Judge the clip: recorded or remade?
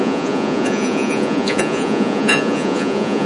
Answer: remade